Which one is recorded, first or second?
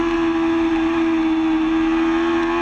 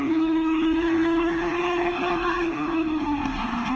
first